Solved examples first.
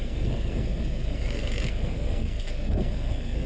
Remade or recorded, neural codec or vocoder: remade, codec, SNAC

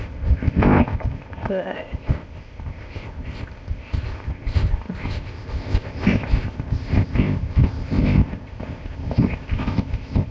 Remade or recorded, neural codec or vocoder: remade, codec, ZipCodec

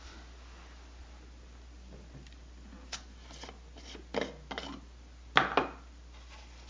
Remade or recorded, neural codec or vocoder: recorded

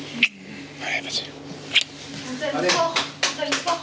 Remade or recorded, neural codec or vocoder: recorded